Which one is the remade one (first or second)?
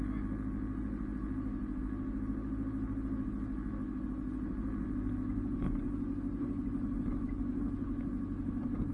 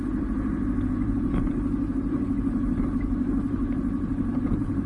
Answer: second